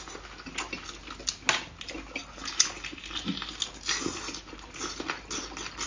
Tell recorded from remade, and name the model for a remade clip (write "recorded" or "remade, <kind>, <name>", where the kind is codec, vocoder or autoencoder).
recorded